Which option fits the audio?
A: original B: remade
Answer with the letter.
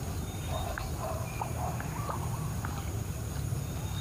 B